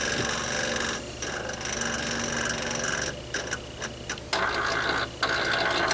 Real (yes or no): yes